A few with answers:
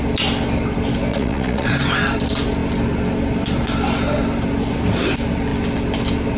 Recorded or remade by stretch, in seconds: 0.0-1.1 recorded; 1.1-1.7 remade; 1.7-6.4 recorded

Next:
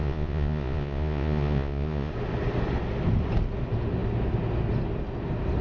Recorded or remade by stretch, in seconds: 0.0-2.1 remade; 2.1-5.6 recorded

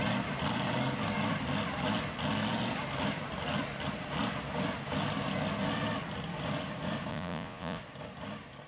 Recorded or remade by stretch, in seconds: 0.0-7.1 recorded; 7.1-7.8 remade; 7.8-8.7 recorded

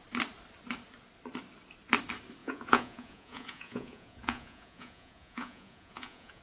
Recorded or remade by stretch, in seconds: 0.0-2.4 recorded; 2.4-6.4 remade

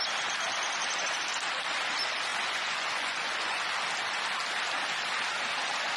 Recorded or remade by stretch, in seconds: 0.0-2.3 recorded; 2.3-3.6 remade; 3.6-6.0 recorded

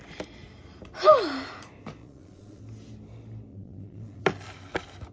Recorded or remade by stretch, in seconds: 0.0-2.0 recorded; 2.0-2.6 remade; 2.6-3.5 recorded; 3.5-4.2 remade; 4.2-5.1 recorded

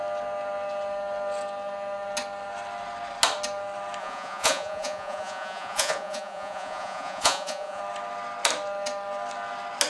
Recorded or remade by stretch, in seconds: 0.0-4.0 recorded; 4.0-7.8 remade; 7.8-9.9 recorded